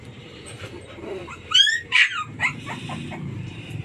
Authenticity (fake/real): fake